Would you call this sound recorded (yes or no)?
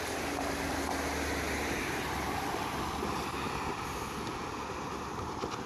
yes